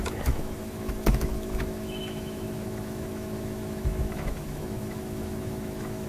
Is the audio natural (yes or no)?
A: no